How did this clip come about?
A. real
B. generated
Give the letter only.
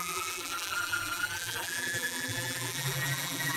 B